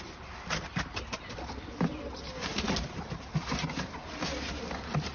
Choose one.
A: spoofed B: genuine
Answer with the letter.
B